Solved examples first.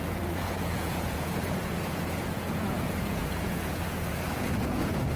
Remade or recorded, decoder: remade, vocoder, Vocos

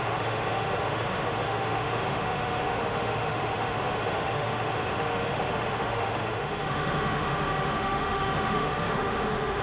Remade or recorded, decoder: remade, autoencoder, DAC-VAE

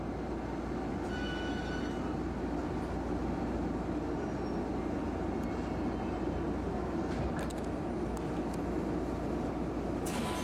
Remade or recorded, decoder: recorded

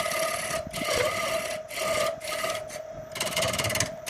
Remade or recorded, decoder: recorded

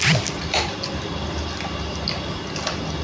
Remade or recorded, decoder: recorded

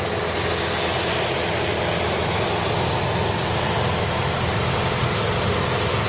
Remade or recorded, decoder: recorded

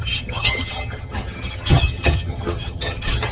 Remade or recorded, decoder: remade, vocoder, HiFi-GAN